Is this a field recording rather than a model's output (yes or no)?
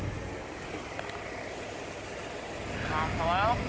yes